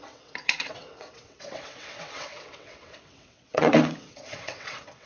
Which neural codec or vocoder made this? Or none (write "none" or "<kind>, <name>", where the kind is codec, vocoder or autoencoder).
vocoder, WaveNeXt